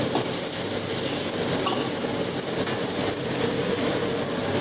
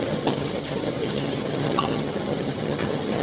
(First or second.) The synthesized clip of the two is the second